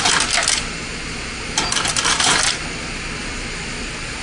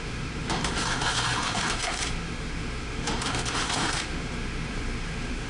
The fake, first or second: second